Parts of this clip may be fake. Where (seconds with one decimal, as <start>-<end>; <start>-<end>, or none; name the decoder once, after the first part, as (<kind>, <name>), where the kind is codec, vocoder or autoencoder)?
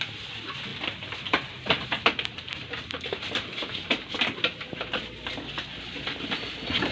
none